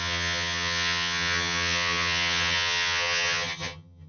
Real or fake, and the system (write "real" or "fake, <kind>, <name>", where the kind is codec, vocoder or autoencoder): fake, vocoder, HiFi-GAN